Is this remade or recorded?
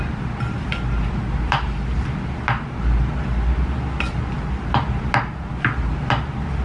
recorded